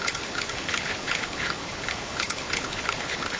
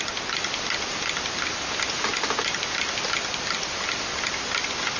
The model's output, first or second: first